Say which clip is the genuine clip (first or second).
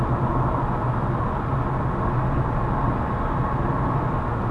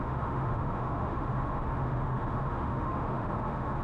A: first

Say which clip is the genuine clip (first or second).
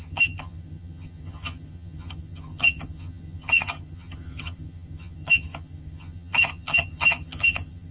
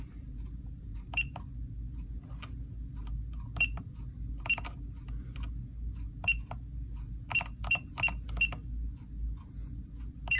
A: second